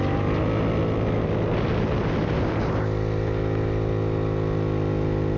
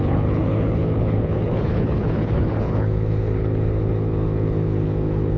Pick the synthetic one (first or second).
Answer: second